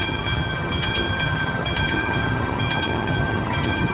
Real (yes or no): no